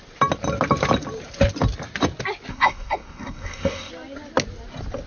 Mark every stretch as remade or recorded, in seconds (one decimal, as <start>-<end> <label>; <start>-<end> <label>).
0.0-2.5 recorded; 2.5-3.9 remade; 3.9-5.1 recorded